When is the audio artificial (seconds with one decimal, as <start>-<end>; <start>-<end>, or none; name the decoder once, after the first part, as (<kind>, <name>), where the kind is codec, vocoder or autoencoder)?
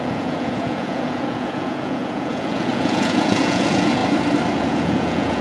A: 0.0-4.0 (vocoder, Vocos); 4.6-5.4